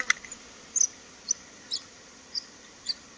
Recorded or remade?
recorded